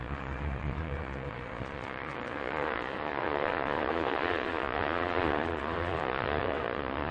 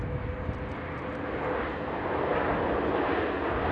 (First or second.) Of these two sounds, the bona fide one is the second